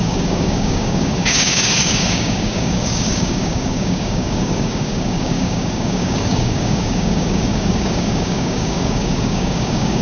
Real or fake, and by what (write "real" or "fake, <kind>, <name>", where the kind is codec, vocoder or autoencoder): fake, codec, DAC